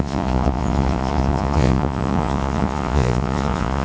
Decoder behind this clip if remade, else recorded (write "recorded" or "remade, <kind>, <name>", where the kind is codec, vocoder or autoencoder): remade, vocoder, Vocos